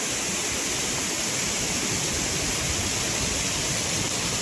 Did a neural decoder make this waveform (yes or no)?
no